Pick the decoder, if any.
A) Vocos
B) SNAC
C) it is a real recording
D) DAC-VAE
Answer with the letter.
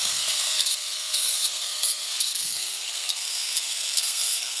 B